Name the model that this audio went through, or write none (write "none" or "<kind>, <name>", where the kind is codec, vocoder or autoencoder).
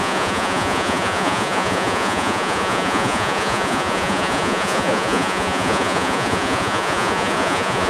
vocoder, Vocos